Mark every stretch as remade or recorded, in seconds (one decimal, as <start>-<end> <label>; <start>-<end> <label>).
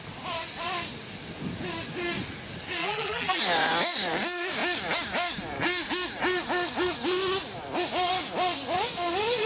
0.0-2.8 recorded; 2.8-3.4 remade; 3.4-9.5 recorded